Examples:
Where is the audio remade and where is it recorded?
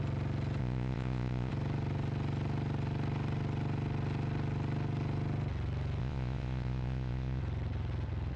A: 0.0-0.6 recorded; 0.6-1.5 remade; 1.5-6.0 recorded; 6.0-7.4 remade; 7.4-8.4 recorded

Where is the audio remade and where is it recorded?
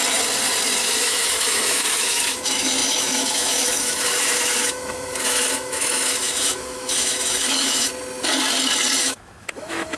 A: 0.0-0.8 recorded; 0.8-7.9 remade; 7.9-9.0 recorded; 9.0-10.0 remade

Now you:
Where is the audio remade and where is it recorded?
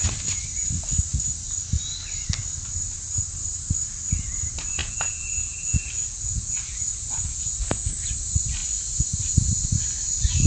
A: 0.0-4.8 recorded; 4.8-7.9 remade; 7.9-10.5 recorded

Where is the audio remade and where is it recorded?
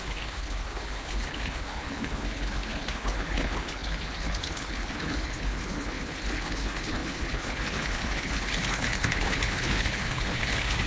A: 0.0-10.9 remade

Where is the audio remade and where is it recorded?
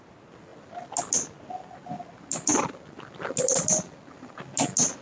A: 0.0-5.0 recorded